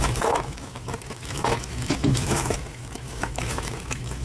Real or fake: fake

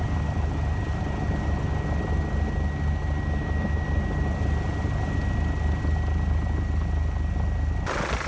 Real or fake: real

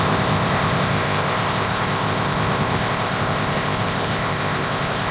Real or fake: fake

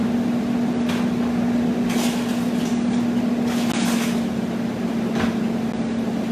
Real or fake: real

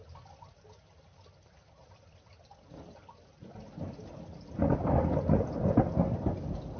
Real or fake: real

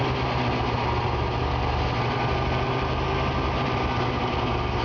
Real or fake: real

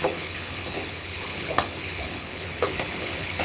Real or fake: fake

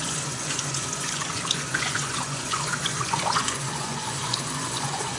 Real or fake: fake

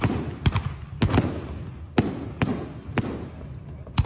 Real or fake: real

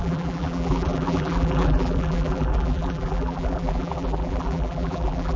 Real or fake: fake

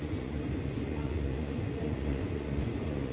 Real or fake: fake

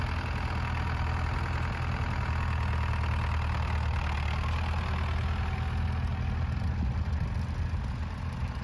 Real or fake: real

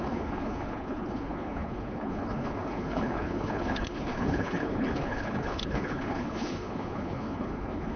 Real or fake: fake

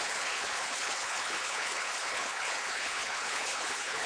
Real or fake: fake